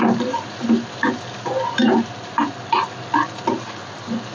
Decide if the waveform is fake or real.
real